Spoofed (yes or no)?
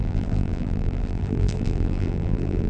yes